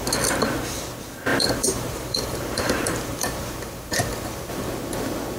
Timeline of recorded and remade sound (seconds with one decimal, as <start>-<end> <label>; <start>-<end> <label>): 0.0-1.3 recorded; 1.3-4.5 remade; 4.5-5.4 recorded